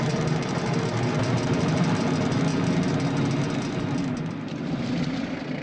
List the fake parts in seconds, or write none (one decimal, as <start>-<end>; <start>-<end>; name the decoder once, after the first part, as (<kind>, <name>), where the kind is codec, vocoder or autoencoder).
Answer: 0.0-2.5 (vocoder, BigVGAN v2); 4.3-5.6